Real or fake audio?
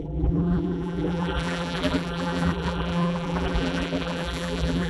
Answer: fake